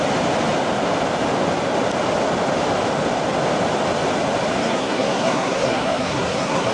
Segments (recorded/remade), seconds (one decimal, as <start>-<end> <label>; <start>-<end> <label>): 0.0-4.6 recorded; 4.6-6.7 remade